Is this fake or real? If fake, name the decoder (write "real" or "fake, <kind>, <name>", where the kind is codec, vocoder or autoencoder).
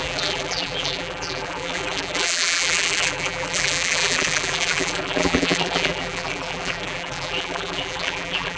fake, vocoder, BigVGAN v2